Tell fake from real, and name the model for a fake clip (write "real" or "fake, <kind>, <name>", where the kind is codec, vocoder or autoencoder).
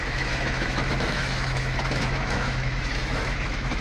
fake, autoencoder, DAC-VAE